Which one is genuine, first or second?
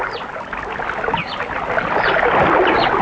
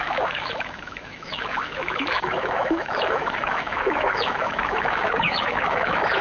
first